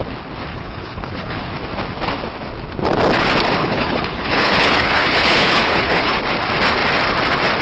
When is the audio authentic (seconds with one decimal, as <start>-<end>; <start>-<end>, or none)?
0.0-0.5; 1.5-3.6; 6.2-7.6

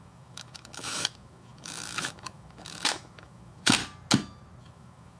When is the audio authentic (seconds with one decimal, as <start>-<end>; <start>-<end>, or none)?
3.8-4.6

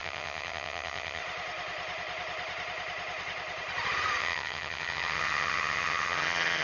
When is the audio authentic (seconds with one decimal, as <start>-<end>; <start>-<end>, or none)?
1.2-4.2